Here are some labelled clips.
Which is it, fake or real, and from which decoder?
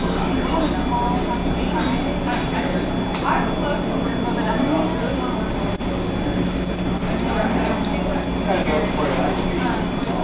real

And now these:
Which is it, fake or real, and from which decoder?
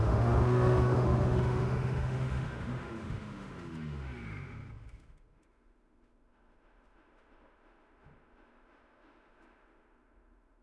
fake, autoencoder, DAC-VAE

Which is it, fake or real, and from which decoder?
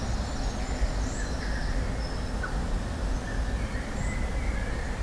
real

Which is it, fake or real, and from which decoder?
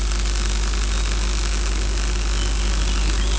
real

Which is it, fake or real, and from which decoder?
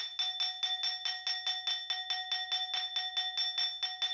real